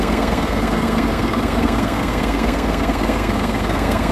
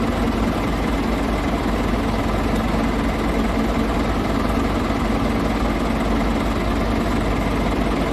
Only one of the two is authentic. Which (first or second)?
second